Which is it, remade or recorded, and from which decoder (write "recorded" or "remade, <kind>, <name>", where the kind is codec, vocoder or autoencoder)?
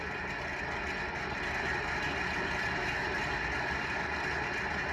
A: recorded